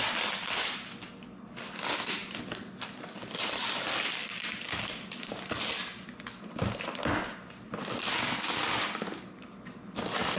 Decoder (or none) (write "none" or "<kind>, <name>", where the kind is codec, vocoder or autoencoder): none